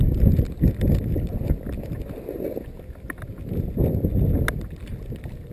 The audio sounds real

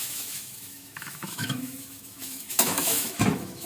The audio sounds fake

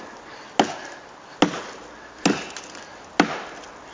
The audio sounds real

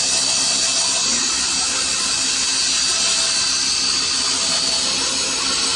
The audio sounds real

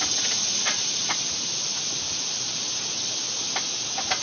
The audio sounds real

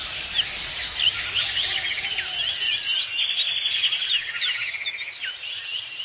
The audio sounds real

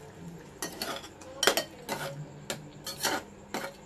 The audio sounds real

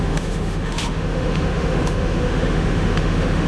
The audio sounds fake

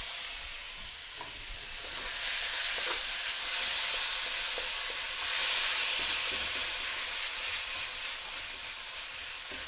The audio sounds real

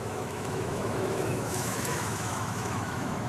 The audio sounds fake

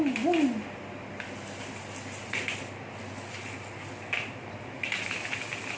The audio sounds real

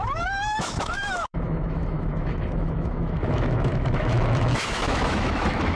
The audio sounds fake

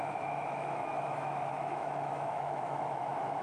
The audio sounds fake